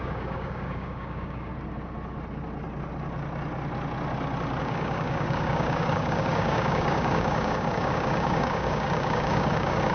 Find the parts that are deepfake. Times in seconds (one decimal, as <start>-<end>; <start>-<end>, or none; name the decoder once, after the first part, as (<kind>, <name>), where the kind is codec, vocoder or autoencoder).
0.0-1.5 (codec, DAC); 4.6-9.9